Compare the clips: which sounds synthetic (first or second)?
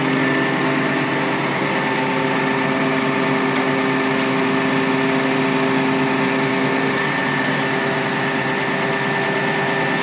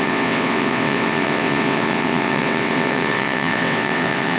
second